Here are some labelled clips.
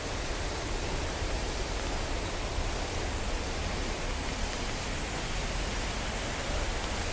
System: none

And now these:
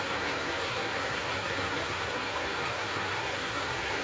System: codec, SNAC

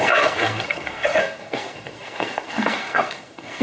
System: codec, SNAC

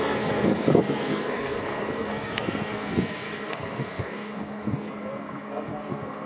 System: codec, SNAC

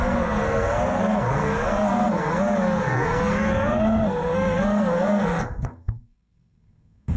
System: codec, SNAC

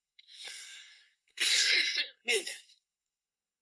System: codec, SNAC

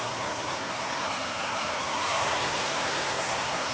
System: codec, SNAC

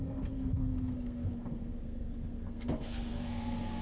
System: codec, SNAC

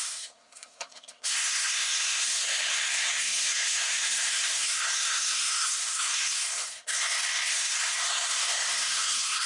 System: codec, SNAC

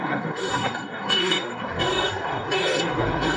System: codec, SNAC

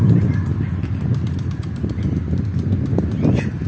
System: none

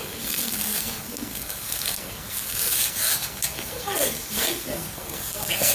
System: codec, SNAC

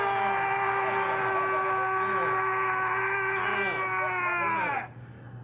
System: none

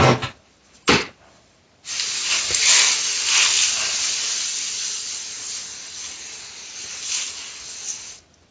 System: none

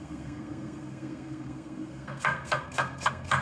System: codec, SNAC